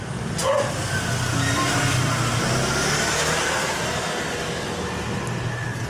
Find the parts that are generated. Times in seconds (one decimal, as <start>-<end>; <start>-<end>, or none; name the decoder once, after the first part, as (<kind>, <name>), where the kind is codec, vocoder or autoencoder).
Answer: none